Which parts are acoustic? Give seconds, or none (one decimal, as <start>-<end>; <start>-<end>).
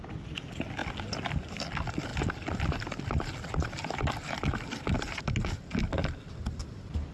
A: 0.0-2.1; 5.2-7.1